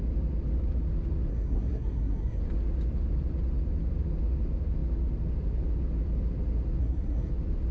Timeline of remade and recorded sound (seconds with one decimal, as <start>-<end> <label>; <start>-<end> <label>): 0.0-1.3 recorded; 1.3-2.4 remade; 2.4-6.8 recorded; 6.8-7.3 remade; 7.3-7.7 recorded